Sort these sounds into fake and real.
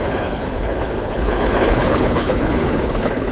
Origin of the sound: fake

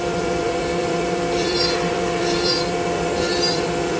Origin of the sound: fake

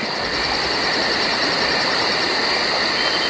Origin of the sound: real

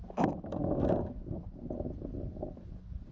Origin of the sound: real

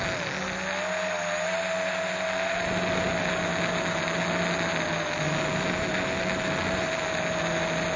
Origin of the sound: real